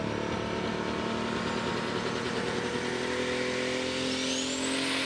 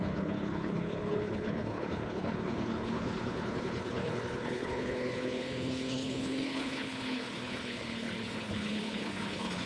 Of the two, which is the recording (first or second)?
first